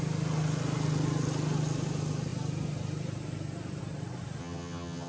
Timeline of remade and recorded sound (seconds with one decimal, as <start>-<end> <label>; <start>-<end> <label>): 0.0-4.4 recorded; 4.4-5.1 remade